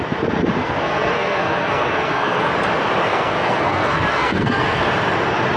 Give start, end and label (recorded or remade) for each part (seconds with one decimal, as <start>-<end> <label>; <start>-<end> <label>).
0.0-0.6 recorded; 0.6-2.5 remade; 2.5-3.1 recorded; 3.1-4.8 remade; 4.8-5.6 recorded